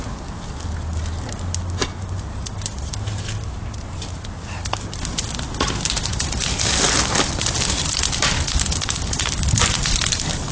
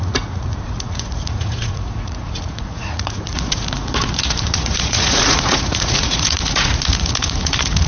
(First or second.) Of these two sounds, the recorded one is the first